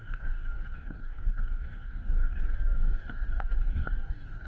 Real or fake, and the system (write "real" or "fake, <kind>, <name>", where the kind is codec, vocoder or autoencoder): fake, codec, DAC